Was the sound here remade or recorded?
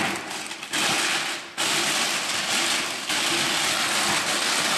recorded